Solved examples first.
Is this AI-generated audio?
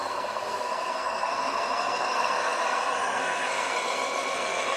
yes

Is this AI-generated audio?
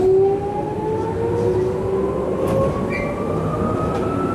no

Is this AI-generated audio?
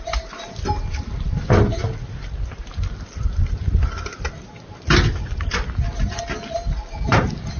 no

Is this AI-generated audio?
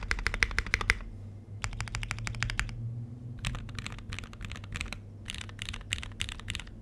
no